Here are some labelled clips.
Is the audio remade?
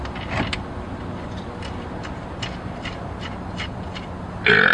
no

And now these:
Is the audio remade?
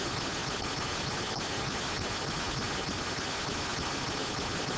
no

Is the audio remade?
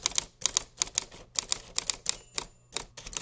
no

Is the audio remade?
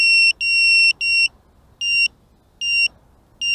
no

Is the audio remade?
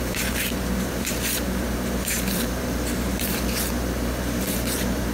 yes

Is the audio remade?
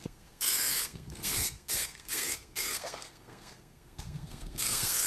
yes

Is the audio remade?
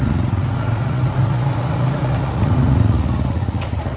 yes